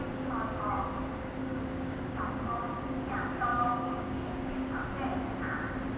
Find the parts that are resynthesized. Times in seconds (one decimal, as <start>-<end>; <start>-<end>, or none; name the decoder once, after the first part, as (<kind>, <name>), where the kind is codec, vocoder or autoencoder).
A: 1.4-2.3 (codec, DAC); 3.5-4.8